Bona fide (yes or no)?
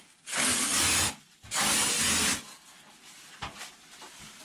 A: yes